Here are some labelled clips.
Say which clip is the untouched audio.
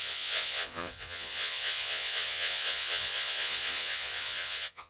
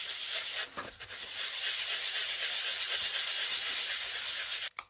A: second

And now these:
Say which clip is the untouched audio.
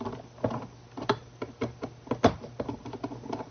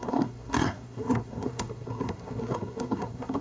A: first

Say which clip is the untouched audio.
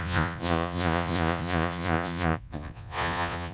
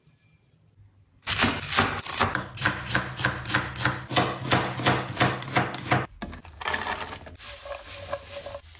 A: second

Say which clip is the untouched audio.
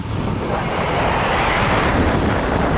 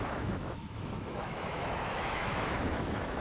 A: first